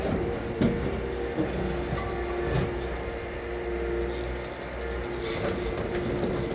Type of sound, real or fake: real